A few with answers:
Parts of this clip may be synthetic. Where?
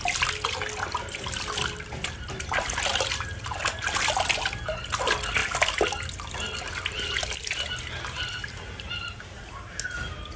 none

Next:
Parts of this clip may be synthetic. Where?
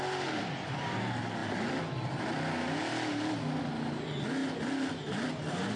none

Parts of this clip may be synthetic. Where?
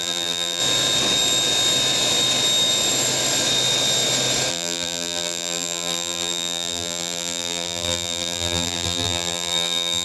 0.0-0.6 (vocoder, BigVGAN v2); 4.5-10.0